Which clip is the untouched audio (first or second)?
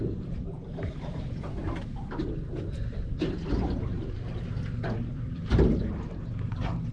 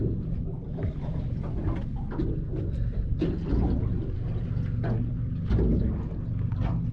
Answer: second